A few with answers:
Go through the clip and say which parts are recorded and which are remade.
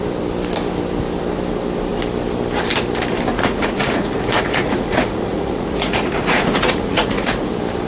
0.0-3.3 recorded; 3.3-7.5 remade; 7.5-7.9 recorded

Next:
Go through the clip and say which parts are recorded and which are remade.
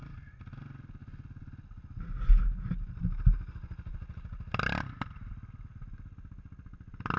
0.0-7.2 recorded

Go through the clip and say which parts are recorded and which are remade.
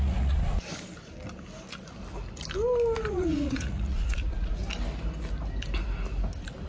0.0-0.7 remade; 0.7-3.1 recorded; 3.1-4.6 remade; 4.6-6.7 recorded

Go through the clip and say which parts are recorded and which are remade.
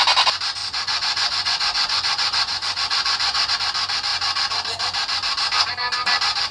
0.0-0.6 recorded; 0.6-3.5 remade; 3.5-6.5 recorded